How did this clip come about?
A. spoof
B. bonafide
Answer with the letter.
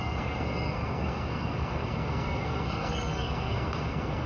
A